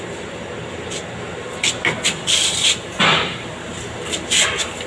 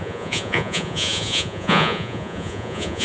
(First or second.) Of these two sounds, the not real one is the second